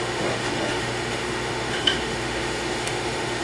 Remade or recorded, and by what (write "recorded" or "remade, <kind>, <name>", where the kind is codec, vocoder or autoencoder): remade, autoencoder, DAC-VAE